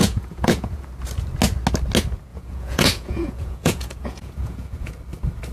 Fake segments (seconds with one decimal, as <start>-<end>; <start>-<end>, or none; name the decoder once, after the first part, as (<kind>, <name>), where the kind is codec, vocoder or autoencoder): 0.0-0.9 (vocoder, Vocos); 2.3-4.9

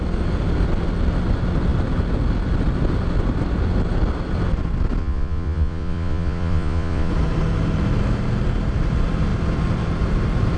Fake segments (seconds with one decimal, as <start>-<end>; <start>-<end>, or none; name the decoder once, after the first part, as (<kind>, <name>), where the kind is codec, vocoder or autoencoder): 5.0-7.1 (vocoder, Vocos)

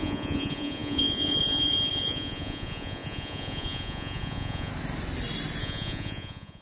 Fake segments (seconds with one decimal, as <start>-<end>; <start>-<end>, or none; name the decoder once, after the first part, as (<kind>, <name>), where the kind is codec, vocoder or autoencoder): 0.0-4.7 (vocoder, Vocos); 5.6-6.6

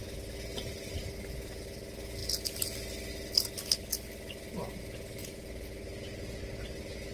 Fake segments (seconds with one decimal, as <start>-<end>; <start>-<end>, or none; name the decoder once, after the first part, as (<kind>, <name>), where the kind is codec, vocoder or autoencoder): 5.2-6.4 (vocoder, Vocos)

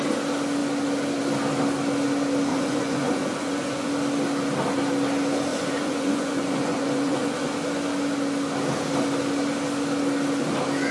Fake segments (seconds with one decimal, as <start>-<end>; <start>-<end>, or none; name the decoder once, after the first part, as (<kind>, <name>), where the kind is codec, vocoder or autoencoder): 2.5-3.9 (vocoder, Vocos); 5.5-7.5

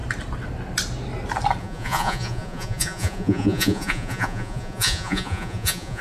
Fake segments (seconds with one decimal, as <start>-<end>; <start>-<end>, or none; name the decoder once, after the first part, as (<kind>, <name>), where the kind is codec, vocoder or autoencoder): 1.6-6.0 (vocoder, Vocos)

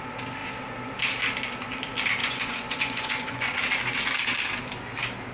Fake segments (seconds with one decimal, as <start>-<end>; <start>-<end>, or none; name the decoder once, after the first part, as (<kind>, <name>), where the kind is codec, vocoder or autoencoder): 2.2-3.6 (vocoder, Vocos)